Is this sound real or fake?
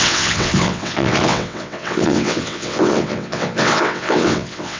fake